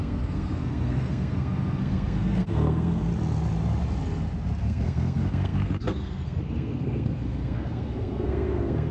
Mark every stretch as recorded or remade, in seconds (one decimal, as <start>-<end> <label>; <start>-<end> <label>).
0.0-3.1 remade; 3.1-4.6 recorded; 4.6-8.9 remade